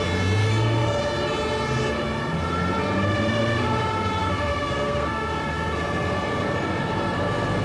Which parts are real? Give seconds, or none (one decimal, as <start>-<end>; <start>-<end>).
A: 0.0-0.4; 1.0-4.5; 5.3-7.6